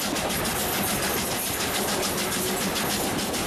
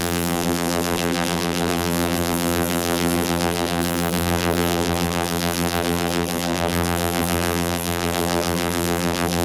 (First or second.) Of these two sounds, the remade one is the second